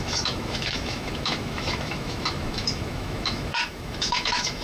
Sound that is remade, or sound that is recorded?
remade